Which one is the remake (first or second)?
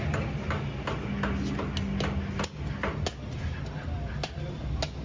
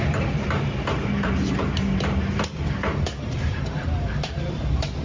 second